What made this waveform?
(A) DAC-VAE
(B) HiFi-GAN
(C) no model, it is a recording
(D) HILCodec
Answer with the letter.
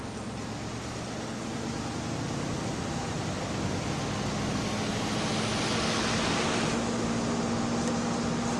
C